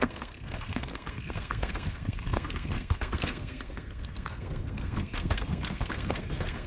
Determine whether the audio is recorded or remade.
remade